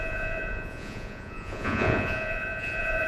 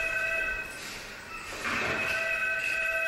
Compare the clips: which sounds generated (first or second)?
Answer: first